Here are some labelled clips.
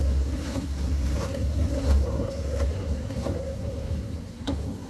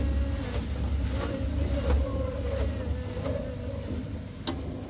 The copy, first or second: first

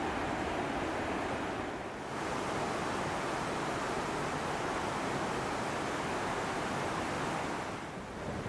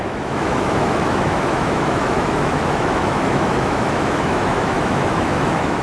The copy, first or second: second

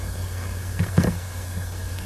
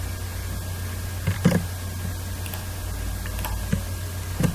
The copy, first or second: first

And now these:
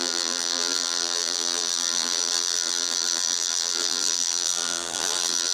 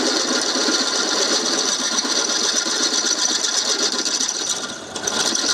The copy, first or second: first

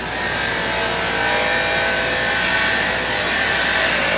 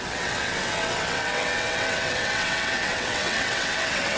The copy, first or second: second